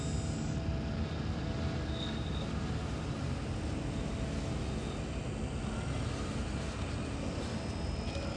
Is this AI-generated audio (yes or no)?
no